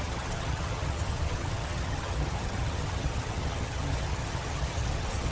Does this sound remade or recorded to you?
remade